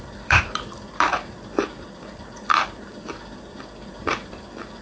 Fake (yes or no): yes